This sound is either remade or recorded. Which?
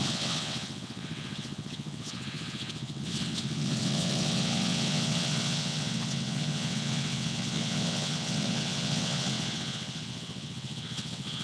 remade